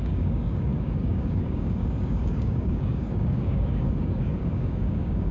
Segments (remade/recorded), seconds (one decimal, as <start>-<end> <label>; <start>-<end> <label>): 0.0-5.3 remade